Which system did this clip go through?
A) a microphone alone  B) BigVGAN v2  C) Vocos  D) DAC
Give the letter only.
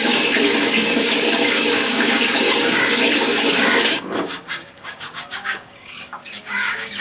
D